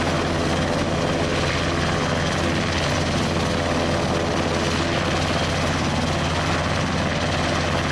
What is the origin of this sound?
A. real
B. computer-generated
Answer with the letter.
A